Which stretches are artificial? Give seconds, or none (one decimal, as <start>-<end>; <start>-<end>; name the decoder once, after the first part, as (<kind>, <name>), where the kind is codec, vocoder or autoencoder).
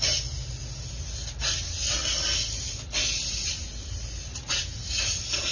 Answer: none